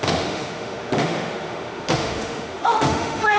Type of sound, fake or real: fake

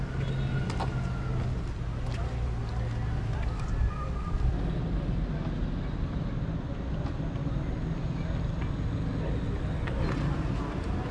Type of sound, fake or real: real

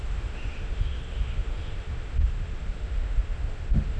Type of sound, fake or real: fake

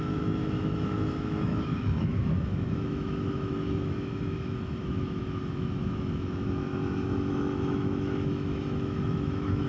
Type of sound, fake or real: fake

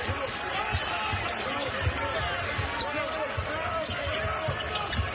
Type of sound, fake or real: real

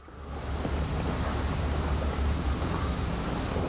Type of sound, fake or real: real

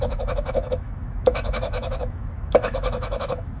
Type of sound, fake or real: fake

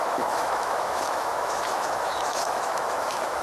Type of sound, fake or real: fake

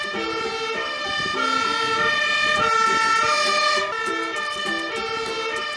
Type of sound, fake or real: real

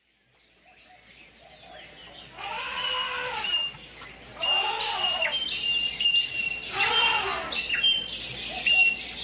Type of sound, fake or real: real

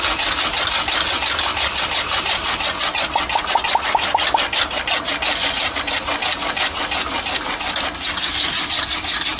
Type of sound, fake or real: real